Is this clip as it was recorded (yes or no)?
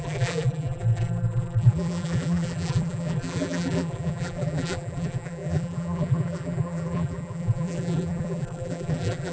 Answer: no